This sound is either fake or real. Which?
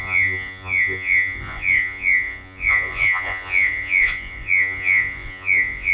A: fake